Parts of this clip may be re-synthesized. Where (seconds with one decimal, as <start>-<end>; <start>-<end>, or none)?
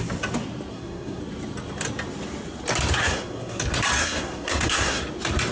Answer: 0.7-1.2; 3.0-3.6; 4.0-5.0